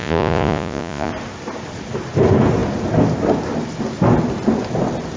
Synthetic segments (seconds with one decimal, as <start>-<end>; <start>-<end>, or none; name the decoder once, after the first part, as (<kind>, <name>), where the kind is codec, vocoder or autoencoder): 0.0-1.1 (vocoder, Vocos)